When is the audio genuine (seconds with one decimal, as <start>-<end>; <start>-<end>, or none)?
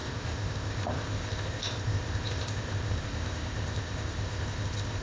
none